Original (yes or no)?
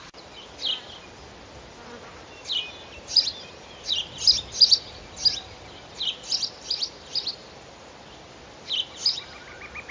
yes